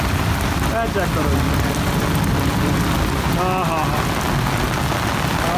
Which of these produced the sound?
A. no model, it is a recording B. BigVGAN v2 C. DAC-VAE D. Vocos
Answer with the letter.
A